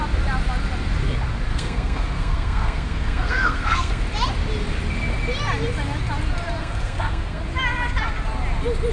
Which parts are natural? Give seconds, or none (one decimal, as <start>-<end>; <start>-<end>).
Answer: 0.0-1.5; 4.0-6.6; 7.4-8.9